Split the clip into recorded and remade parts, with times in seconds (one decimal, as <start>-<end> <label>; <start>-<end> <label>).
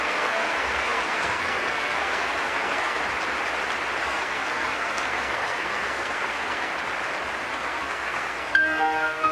0.0-3.0 remade; 3.0-4.0 recorded; 4.0-6.7 remade; 6.7-7.5 recorded; 7.5-9.3 remade